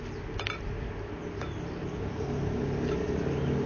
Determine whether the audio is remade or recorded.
recorded